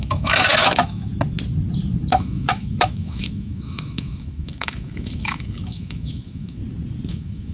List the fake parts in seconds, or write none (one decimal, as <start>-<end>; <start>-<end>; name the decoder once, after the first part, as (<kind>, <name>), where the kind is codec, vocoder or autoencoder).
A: 0.0-1.1 (autoencoder, DAC-VAE); 2.1-6.6; 7.1-7.5